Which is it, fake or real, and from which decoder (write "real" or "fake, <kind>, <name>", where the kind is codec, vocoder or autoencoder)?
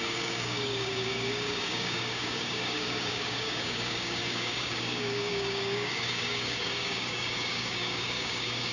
fake, codec, DAC